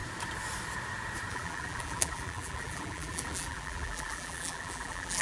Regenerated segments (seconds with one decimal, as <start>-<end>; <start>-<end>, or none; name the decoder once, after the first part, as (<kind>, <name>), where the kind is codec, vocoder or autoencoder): 1.3-5.2 (vocoder, BigVGAN v2)